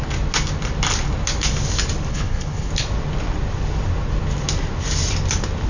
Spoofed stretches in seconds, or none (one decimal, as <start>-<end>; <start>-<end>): 2.1-2.7